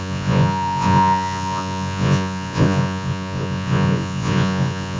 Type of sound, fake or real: fake